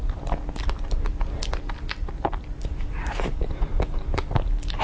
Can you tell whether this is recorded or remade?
recorded